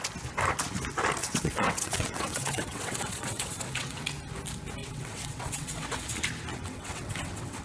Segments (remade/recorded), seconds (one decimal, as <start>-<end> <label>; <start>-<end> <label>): 0.0-1.2 recorded; 1.2-4.0 remade; 4.0-4.8 recorded; 4.8-6.0 remade; 6.0-6.6 recorded; 6.6-7.6 remade